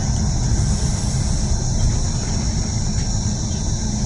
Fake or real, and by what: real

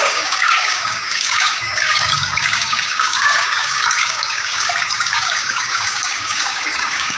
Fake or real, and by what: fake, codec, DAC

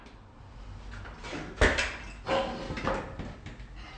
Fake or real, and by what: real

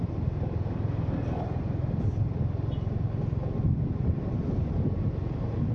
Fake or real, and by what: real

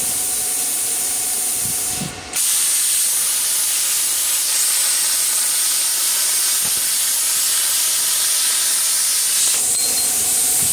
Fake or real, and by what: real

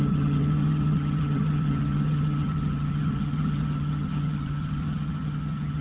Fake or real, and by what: fake, vocoder, HiFi-GAN